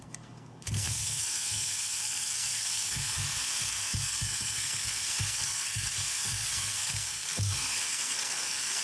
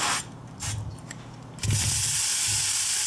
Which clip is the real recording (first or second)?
second